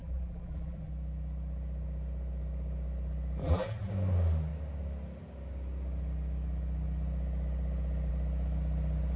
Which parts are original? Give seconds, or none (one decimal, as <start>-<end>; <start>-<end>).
0.9-3.4; 3.9-9.2

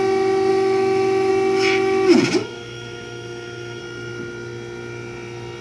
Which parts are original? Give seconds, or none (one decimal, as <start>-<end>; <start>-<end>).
0.0-0.5; 1.3-2.4; 3.8-5.6

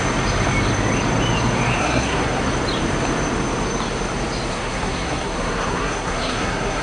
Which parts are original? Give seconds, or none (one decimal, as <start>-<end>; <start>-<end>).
0.0-1.8; 2.4-4.5

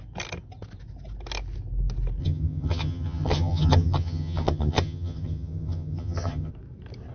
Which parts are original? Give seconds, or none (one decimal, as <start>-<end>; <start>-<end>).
0.0-2.2; 6.5-7.1